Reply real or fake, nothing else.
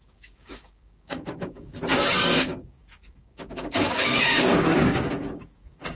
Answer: fake